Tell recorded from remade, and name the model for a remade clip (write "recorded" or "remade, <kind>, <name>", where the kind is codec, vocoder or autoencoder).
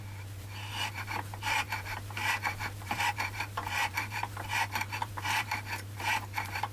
remade, vocoder, BigVGAN v2